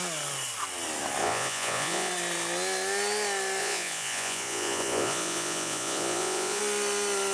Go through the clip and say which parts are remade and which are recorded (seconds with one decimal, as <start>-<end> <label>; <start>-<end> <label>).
0.0-1.2 recorded; 1.2-2.1 remade; 2.1-3.6 recorded; 3.6-6.6 remade; 6.6-7.3 recorded